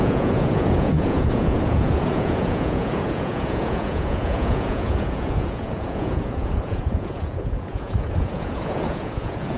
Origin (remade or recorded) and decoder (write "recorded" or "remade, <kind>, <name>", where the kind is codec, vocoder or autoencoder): remade, vocoder, Vocos